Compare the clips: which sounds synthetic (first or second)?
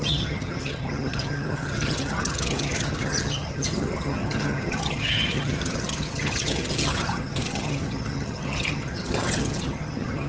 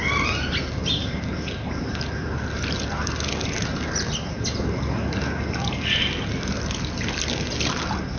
first